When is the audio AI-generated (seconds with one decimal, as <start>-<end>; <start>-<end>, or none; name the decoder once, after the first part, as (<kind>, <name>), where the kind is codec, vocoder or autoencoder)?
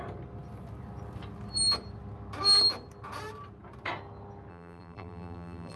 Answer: 4.5-5.8 (vocoder, BigVGAN v2)